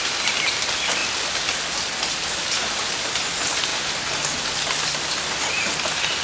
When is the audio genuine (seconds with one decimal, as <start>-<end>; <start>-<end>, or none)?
0.0-6.2